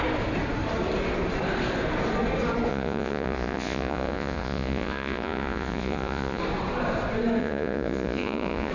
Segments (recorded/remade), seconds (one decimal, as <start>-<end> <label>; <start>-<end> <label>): 0.0-2.7 recorded; 2.7-6.4 remade; 6.4-7.4 recorded; 7.4-8.7 remade